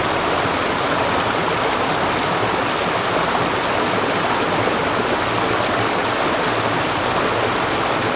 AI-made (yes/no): no